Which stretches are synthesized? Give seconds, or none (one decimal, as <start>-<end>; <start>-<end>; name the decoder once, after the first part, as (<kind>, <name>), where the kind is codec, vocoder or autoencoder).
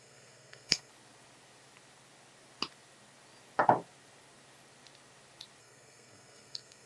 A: 0.0-0.9 (codec, SNAC); 5.6-6.9